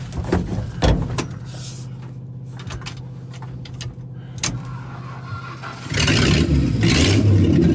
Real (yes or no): yes